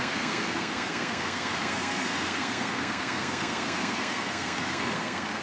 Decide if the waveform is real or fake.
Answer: fake